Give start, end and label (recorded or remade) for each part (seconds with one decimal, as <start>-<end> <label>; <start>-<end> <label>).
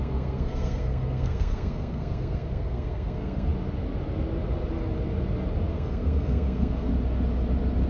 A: 0.0-3.5 remade; 3.5-5.7 recorded; 5.7-6.9 remade; 6.9-7.9 recorded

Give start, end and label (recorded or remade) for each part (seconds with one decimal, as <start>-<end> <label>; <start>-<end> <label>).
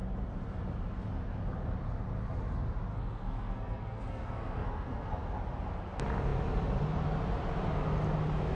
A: 0.0-2.9 recorded; 2.9-5.1 remade; 5.1-8.6 recorded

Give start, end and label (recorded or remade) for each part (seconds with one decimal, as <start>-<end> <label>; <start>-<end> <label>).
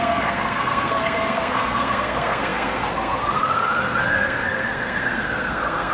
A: 0.0-5.9 remade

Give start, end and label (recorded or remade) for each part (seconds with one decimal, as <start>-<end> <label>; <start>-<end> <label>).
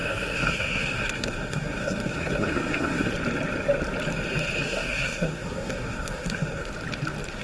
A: 0.0-3.1 remade; 3.1-4.6 recorded; 4.6-6.7 remade; 6.7-7.4 recorded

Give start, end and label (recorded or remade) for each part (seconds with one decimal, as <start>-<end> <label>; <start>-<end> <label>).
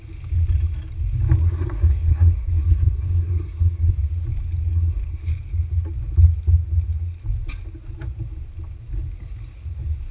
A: 0.0-1.4 recorded; 1.4-3.9 remade; 3.9-4.7 recorded; 4.7-5.3 remade; 5.3-10.1 recorded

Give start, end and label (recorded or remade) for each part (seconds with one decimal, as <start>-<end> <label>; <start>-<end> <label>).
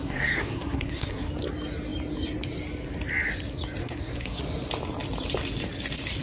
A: 0.0-1.3 remade; 1.3-3.8 recorded; 3.8-4.4 remade; 4.4-6.2 recorded